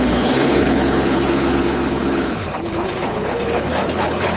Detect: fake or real fake